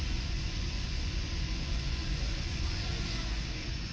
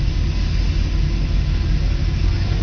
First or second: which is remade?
first